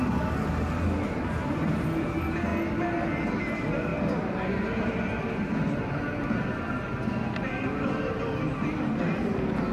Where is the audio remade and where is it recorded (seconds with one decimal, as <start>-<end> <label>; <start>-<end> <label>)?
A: 0.0-9.7 recorded